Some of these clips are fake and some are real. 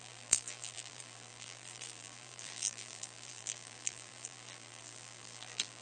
fake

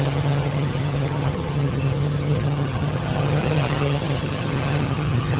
fake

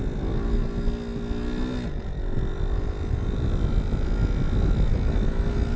real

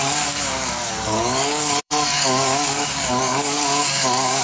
fake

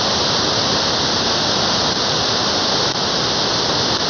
real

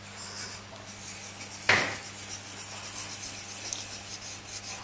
real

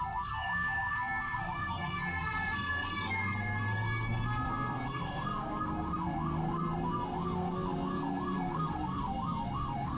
fake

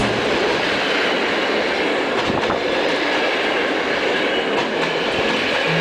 real